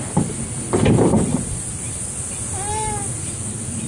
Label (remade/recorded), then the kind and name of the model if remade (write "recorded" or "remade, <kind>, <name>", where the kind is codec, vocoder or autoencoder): recorded